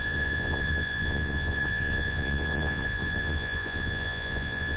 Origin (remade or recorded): remade